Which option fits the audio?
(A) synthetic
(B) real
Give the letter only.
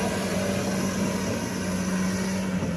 B